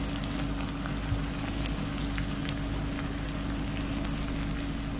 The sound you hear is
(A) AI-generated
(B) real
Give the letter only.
B